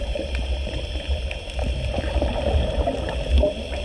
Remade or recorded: remade